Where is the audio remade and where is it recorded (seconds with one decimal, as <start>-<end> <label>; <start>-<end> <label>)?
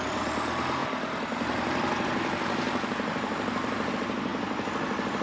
0.0-0.8 recorded; 0.8-3.9 remade; 3.9-4.3 recorded; 4.3-5.2 remade